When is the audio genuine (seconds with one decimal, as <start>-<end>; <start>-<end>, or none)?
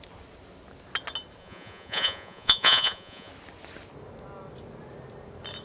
0.0-1.4; 3.3-5.6